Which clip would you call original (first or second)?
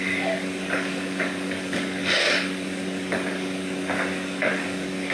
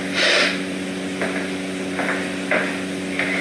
second